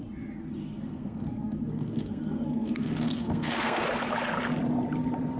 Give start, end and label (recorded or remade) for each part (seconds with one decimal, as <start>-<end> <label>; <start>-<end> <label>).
0.0-0.6 recorded; 0.6-3.8 remade; 3.8-5.4 recorded